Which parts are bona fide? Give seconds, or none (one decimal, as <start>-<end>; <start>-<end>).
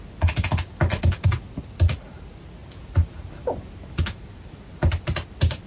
0.0-5.7